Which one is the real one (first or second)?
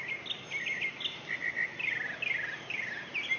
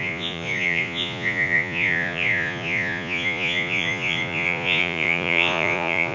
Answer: first